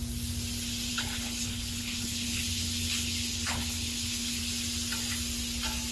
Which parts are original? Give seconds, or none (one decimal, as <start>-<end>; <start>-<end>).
0.0-0.9; 4.4-5.9